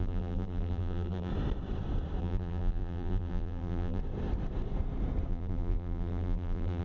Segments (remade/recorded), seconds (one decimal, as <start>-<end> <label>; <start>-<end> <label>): 0.0-1.3 remade; 1.3-2.2 recorded; 2.2-4.0 remade; 4.0-5.3 recorded; 5.3-6.8 remade

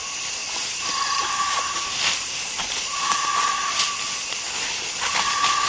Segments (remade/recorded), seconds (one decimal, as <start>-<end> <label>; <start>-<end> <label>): 0.0-0.4 recorded; 0.4-1.6 remade; 1.6-5.7 recorded

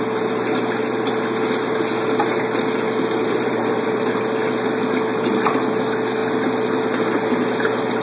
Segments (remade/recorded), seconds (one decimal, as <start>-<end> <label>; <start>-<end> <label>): 0.0-3.2 recorded; 3.2-4.2 remade; 4.2-8.0 recorded

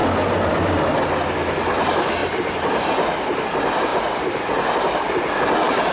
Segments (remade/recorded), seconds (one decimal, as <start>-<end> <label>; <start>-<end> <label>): 0.0-2.2 recorded; 2.2-2.9 remade; 2.9-3.9 recorded; 3.9-4.5 remade; 4.5-5.9 recorded